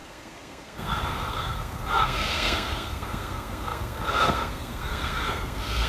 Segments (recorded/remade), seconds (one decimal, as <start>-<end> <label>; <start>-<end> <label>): 0.0-5.9 remade